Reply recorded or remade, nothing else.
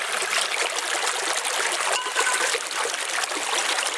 recorded